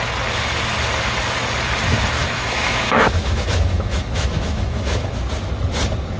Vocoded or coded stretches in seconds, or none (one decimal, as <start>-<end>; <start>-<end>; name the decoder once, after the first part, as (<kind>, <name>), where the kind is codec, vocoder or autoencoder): 2.2-5.1 (autoencoder, DAC-VAE)